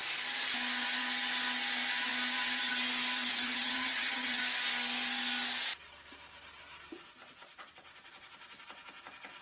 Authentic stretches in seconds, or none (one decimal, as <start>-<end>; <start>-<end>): 0.0-3.3; 4.4-9.4